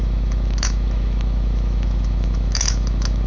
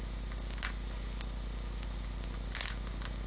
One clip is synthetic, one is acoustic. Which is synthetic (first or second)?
first